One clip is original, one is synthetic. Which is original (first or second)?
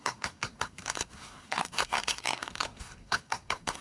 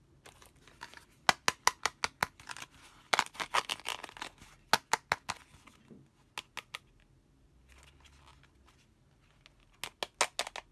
second